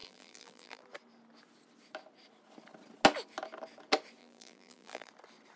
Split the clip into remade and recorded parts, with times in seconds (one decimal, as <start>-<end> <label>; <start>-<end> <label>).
0.0-0.8 remade; 0.8-4.2 recorded; 4.2-5.1 remade; 5.1-5.6 recorded